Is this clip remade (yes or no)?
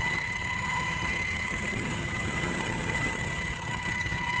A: yes